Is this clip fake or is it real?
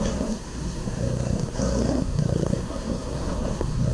fake